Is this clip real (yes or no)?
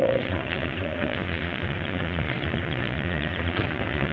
no